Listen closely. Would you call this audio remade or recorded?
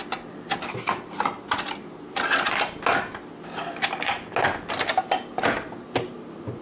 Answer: recorded